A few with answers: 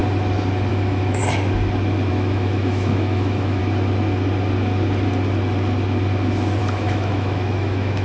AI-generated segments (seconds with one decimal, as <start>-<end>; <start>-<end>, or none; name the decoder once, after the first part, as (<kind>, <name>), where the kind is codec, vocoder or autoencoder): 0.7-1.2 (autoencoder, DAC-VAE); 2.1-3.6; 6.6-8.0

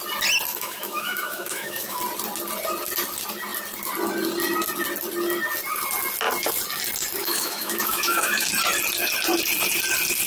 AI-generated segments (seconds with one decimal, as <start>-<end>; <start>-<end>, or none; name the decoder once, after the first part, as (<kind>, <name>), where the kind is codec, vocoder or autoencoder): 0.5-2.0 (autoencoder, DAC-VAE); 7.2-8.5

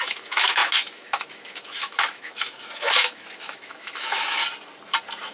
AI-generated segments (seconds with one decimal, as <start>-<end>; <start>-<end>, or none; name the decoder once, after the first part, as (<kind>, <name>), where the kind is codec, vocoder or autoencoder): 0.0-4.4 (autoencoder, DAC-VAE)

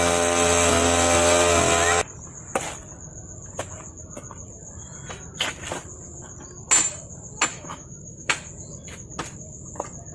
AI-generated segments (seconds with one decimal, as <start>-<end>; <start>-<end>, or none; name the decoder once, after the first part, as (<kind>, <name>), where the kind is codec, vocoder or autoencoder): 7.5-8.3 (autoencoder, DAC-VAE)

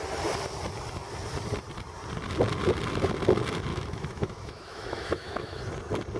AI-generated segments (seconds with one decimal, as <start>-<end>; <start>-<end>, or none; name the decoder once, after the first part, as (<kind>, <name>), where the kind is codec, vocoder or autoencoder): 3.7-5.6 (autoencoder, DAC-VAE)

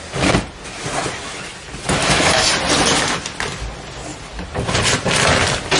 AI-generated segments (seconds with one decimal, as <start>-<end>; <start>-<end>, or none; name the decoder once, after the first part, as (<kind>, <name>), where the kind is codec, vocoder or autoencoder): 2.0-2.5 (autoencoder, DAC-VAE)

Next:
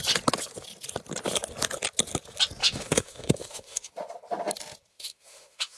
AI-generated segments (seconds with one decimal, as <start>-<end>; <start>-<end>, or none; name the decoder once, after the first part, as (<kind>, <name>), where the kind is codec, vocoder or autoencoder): 2.6-3.9 (autoencoder, DAC-VAE); 4.9-5.8